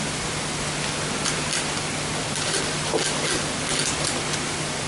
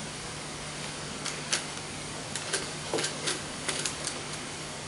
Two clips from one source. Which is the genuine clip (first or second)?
first